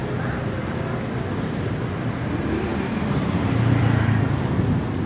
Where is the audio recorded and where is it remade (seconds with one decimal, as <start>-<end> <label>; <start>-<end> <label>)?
0.0-5.1 recorded